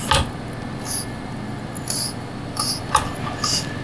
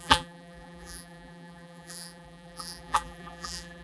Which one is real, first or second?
first